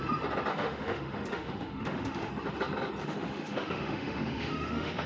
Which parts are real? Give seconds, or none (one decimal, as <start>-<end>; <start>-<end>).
0.0-0.5; 2.3-3.0